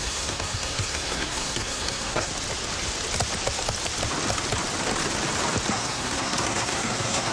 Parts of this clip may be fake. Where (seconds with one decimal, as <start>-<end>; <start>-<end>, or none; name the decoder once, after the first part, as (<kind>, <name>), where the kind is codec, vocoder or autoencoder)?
0.0-2.3 (codec, SNAC); 5.7-7.3